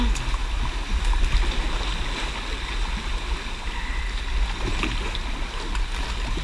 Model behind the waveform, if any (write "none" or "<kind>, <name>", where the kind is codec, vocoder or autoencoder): none